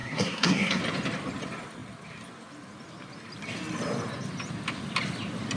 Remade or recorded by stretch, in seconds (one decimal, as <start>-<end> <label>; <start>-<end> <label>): 0.0-0.8 remade; 0.8-5.6 recorded

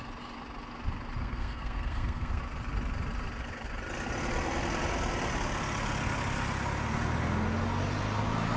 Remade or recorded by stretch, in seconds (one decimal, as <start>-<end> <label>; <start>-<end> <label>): 0.0-1.2 recorded; 1.2-2.4 remade; 2.4-8.6 recorded

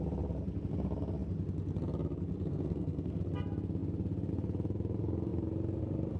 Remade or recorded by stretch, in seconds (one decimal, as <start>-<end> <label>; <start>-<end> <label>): 0.0-2.5 recorded; 2.5-3.2 remade; 3.2-6.2 recorded

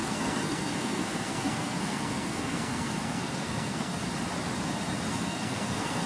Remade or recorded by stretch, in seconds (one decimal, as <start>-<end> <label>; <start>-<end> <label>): 0.0-3.9 remade; 3.9-5.1 recorded; 5.1-6.1 remade